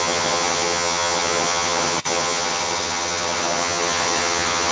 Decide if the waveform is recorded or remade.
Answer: remade